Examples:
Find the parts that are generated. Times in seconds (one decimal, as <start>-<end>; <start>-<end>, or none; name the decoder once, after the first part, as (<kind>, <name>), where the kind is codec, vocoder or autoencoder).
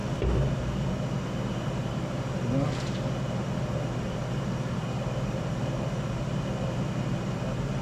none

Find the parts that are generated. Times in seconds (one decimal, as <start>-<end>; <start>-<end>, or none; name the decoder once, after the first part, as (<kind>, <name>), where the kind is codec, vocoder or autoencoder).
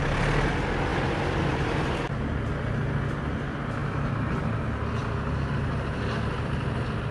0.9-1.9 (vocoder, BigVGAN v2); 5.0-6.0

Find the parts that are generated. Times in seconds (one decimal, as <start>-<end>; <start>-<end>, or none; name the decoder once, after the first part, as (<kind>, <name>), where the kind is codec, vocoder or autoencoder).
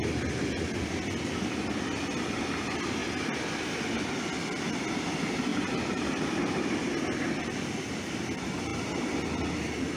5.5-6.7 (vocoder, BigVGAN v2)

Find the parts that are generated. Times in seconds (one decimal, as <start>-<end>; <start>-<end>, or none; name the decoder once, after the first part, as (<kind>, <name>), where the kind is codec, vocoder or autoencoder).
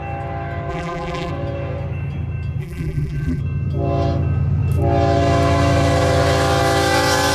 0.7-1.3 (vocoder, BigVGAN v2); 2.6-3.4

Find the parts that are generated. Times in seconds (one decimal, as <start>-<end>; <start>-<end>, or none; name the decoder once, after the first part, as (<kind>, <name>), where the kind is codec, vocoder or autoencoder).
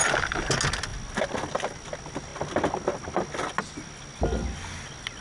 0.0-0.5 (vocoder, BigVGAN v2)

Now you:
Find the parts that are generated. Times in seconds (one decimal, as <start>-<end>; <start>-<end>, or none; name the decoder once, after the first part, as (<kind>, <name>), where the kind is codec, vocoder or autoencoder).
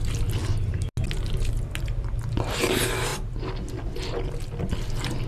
0.4-0.9 (vocoder, BigVGAN v2)